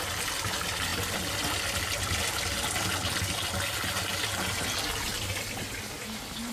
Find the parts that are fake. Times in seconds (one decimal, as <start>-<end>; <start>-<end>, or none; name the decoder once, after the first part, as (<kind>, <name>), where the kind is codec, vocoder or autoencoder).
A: none